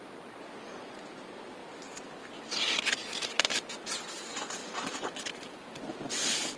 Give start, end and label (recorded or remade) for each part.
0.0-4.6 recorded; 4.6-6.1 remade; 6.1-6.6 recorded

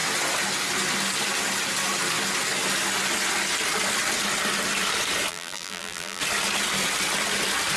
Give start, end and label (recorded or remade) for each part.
0.0-5.3 recorded; 5.3-6.2 remade; 6.2-7.8 recorded